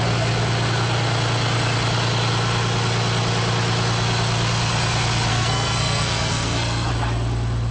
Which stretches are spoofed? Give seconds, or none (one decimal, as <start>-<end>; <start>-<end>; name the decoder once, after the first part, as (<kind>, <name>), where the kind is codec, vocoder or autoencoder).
5.3-6.9 (codec, SNAC)

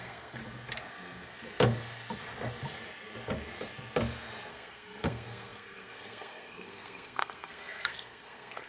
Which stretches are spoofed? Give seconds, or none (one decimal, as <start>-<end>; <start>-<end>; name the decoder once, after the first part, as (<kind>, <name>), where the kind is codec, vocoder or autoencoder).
0.0-0.4 (codec, SNAC); 4.5-8.7

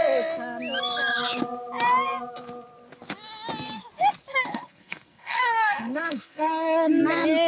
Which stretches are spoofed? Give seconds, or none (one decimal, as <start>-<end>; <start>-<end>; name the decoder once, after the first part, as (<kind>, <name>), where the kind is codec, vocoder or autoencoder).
4.5-7.0 (codec, SNAC)

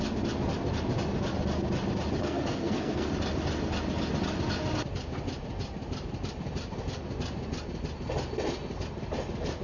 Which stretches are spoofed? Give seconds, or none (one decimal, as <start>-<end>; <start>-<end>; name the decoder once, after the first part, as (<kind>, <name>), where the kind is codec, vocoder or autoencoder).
2.2-3.1 (codec, SNAC)

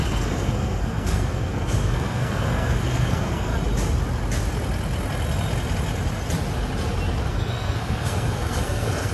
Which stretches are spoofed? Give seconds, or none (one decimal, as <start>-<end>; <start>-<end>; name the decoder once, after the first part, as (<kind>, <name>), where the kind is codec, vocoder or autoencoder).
0.0-3.5 (codec, SNAC); 7.3-9.1